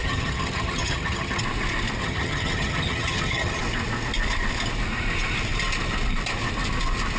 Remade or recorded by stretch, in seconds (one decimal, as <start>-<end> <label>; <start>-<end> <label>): 0.0-1.4 remade; 1.4-2.0 recorded; 2.0-3.6 remade; 3.6-7.2 recorded